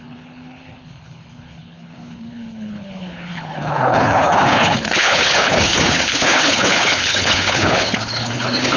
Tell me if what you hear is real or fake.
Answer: fake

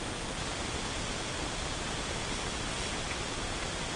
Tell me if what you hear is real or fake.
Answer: real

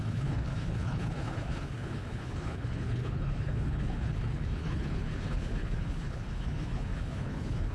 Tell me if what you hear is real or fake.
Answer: fake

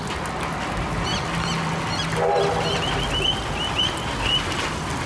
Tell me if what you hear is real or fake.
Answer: real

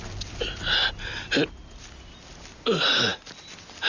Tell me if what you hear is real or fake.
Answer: real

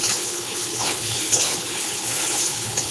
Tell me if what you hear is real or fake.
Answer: fake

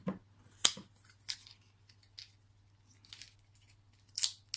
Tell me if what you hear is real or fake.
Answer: real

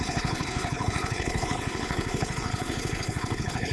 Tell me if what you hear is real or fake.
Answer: fake